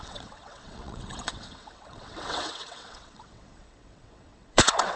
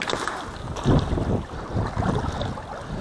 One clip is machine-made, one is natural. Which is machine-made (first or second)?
first